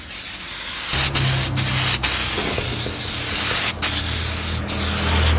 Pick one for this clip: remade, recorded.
recorded